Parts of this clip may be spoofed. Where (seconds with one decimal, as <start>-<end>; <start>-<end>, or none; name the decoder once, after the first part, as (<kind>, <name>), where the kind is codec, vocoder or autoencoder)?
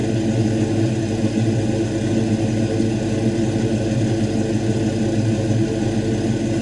none